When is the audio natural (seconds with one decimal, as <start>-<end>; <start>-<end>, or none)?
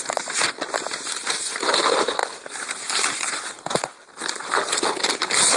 0.0-5.6